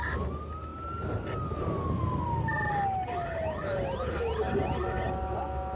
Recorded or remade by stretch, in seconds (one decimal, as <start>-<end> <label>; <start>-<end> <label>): 0.0-5.8 recorded